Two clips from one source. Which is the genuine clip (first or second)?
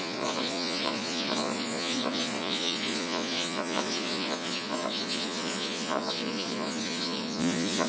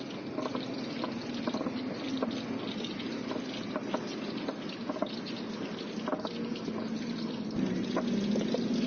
second